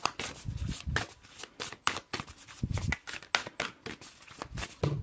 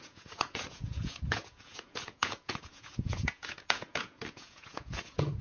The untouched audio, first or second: first